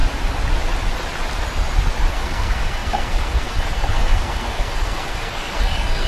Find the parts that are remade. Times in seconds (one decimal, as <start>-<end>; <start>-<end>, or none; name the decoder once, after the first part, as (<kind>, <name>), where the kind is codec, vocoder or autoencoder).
2.1-6.1 (codec, SNAC)